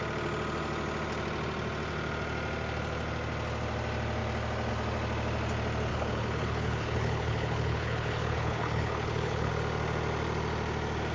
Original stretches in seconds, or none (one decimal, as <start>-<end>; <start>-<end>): 0.0-5.9; 9.5-11.1